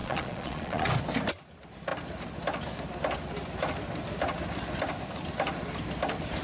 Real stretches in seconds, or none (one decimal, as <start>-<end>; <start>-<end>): 0.9-6.4